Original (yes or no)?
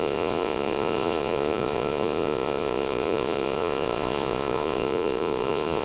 no